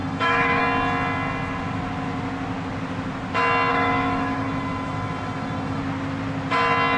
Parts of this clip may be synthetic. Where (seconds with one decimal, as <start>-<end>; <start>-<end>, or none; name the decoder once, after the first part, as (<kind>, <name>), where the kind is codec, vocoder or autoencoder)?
0.0-0.6 (autoencoder, DAC-VAE); 3.7-5.8